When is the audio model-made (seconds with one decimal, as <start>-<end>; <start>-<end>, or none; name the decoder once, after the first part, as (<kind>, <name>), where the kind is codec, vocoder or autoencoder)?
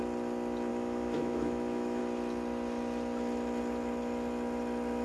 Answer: 0.7-2.0 (autoencoder, DAC-VAE)